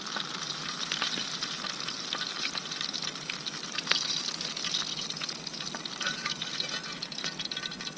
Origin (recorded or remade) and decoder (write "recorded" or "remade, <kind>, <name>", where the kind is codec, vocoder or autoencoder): recorded